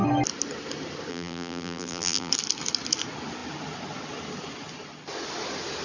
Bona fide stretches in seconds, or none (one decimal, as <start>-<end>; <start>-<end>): 0.0-1.1; 2.3-5.8